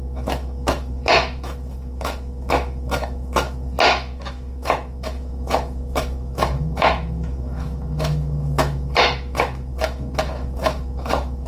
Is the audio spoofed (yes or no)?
yes